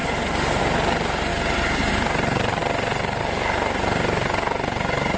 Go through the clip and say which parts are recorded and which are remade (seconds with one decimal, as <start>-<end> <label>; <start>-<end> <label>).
0.0-1.3 recorded; 1.3-1.9 remade; 1.9-5.2 recorded